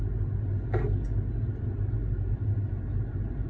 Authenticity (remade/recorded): recorded